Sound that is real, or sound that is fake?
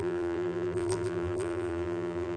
fake